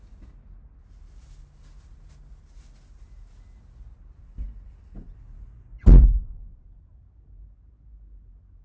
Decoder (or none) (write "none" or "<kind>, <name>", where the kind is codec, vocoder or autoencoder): none